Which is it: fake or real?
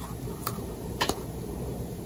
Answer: fake